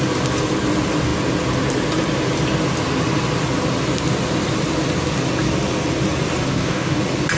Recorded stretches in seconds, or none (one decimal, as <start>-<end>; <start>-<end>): 0.0-6.5; 7.0-7.4